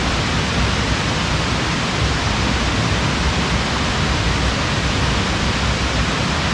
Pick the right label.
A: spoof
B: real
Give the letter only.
B